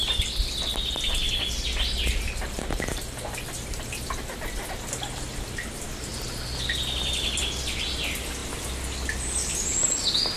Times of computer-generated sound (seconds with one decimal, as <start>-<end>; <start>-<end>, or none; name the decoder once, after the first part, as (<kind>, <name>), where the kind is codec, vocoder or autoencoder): none